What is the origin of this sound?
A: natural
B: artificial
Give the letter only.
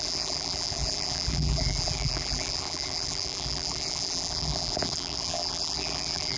B